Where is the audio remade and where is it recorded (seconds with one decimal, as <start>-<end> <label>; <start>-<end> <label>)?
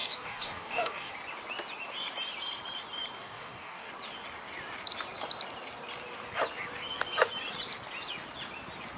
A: 0.0-1.1 remade; 1.1-3.2 recorded; 3.2-3.9 remade; 3.9-9.0 recorded